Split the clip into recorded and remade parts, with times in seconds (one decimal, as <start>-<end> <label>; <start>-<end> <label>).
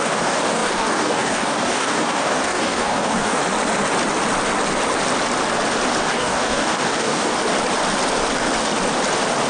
0.0-3.4 remade; 3.4-6.1 recorded; 6.1-7.3 remade; 7.3-9.5 recorded